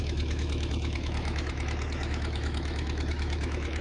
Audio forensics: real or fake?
fake